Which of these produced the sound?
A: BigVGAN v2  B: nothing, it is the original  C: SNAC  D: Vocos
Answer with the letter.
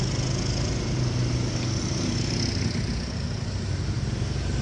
B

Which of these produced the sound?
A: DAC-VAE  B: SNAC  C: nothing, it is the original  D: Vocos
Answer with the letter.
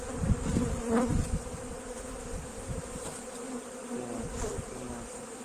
C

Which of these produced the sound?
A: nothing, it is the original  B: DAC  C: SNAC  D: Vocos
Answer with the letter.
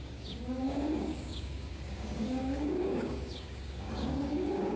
B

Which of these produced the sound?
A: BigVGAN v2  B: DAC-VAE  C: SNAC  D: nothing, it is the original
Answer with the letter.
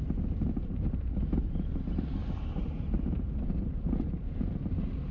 A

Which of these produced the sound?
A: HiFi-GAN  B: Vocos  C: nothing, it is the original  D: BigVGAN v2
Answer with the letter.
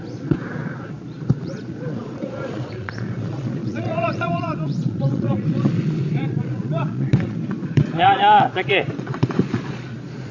B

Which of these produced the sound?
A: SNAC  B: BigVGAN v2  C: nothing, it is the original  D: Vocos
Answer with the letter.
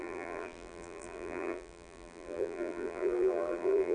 B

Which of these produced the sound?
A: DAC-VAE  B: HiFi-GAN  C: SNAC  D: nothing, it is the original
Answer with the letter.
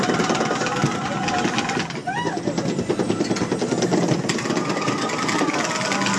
D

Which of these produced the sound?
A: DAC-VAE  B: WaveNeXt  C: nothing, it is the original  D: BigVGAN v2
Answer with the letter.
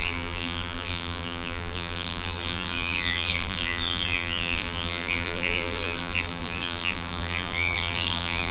D